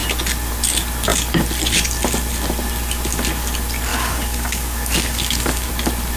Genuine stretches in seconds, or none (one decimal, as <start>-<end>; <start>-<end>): 0.0-3.9; 5.7-6.2

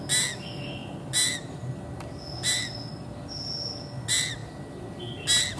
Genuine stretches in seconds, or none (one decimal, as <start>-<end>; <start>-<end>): 0.0-5.6

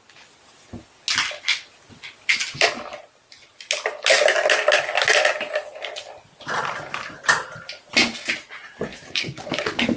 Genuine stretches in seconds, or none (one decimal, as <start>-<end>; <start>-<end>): 0.0-8.9

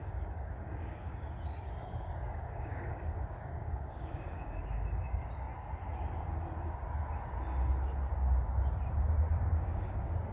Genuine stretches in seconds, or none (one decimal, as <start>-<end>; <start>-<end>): 5.5-9.4

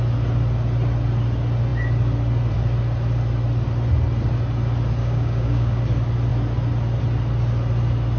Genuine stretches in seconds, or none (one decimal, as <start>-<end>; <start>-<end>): 0.0-5.0; 5.8-8.2